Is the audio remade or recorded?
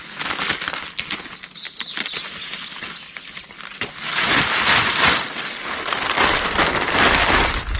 recorded